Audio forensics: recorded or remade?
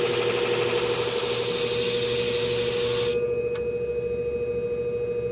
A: recorded